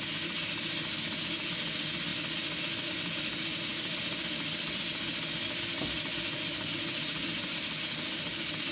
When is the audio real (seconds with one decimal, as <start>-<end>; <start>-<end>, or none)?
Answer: 0.0-8.7